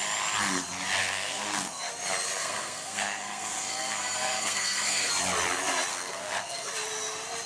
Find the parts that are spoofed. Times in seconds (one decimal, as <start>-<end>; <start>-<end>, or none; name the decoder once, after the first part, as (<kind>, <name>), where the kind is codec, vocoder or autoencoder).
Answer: 1.0-1.9 (codec, SNAC); 2.4-5.1; 5.9-6.7